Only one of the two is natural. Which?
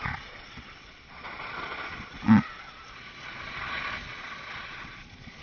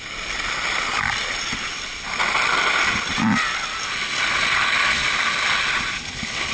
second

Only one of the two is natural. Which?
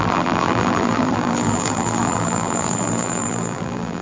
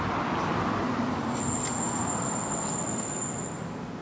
second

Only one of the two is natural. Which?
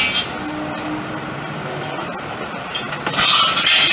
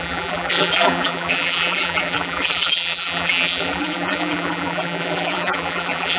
first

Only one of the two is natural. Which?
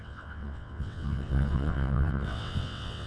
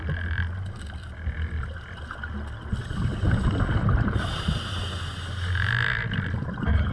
second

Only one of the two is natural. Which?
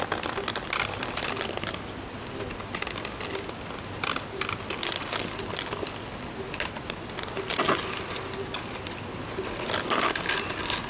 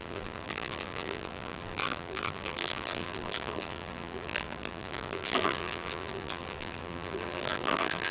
first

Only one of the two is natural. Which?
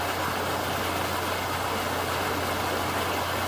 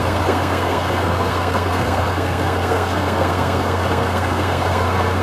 first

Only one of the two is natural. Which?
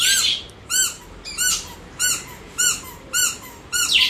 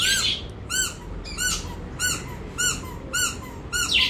second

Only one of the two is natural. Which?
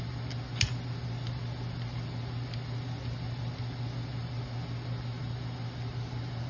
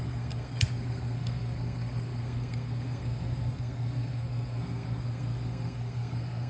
first